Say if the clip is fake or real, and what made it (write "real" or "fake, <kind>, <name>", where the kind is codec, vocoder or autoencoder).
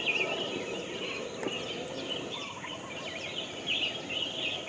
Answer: real